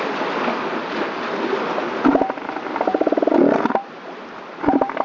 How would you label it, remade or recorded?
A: recorded